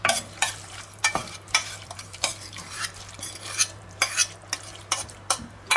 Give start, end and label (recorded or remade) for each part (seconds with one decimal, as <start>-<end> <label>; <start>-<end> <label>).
0.0-4.2 remade; 4.2-4.8 recorded; 4.8-5.8 remade